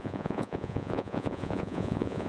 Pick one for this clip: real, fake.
fake